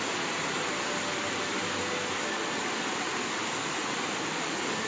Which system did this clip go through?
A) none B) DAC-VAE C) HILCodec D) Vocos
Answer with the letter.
A